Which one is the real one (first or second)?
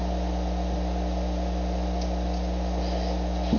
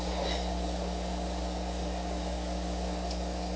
first